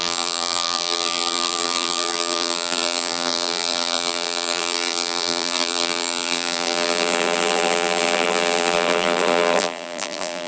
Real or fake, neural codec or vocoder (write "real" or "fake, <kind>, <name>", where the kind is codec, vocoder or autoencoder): fake, vocoder, BigVGAN v2